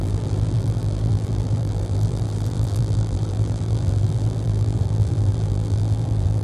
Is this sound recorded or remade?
remade